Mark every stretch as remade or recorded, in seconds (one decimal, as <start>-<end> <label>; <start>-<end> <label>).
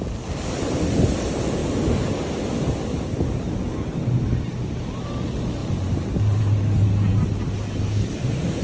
0.0-8.6 recorded